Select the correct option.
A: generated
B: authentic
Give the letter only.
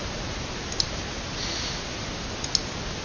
B